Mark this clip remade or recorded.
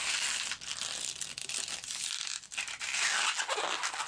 recorded